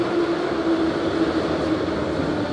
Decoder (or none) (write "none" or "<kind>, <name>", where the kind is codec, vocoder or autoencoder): none